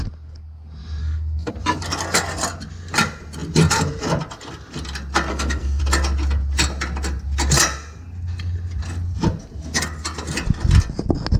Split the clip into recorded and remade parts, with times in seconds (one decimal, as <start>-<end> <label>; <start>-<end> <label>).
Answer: 0.0-1.0 recorded; 1.0-1.5 remade; 1.5-5.3 recorded; 5.3-5.8 remade; 5.8-11.4 recorded